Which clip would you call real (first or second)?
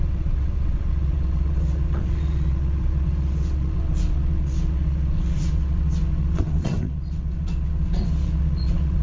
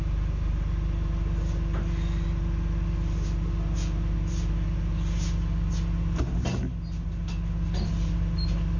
second